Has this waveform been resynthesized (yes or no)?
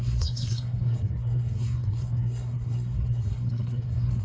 yes